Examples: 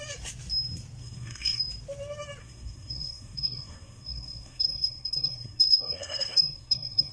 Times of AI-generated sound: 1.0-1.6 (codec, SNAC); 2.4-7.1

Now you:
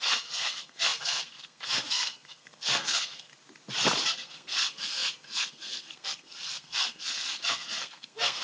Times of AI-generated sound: 0.0-3.3 (codec, SNAC); 4.1-8.4

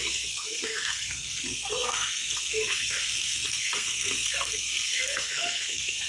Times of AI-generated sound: 0.0-6.1 (codec, SNAC)

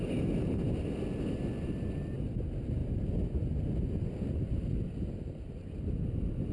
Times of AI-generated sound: none

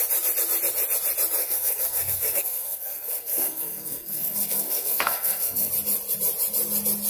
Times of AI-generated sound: 1.4-5.7 (codec, SNAC)